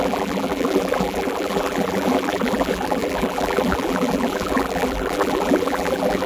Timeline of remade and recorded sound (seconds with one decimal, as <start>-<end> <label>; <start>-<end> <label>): 0.0-6.3 remade